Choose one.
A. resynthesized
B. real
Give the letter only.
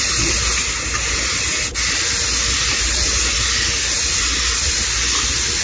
B